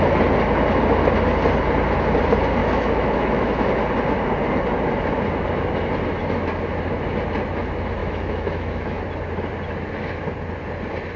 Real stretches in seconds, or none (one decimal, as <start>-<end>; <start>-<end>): 0.0-2.6; 3.7-8.0; 9.0-11.2